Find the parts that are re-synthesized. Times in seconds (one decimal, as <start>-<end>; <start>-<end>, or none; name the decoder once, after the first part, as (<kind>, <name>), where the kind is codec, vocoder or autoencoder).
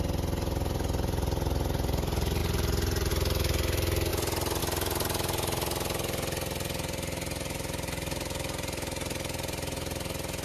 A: none